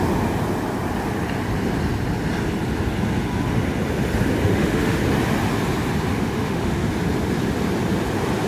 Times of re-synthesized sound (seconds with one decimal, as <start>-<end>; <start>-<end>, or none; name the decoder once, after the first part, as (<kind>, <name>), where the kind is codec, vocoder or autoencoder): 4.4-5.0 (autoencoder, DAC-VAE); 6.1-6.9